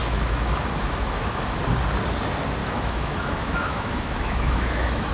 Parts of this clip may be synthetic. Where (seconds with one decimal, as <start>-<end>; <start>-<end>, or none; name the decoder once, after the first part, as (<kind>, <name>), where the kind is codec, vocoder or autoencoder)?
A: 0.0-1.6 (autoencoder, DAC-VAE); 2.6-5.1